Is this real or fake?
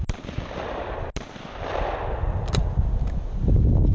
real